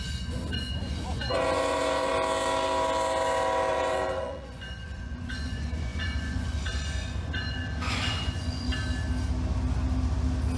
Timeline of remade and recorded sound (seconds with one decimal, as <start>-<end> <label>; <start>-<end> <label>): 0.0-2.1 remade; 2.1-3.7 recorded; 3.7-8.7 remade; 8.7-10.6 recorded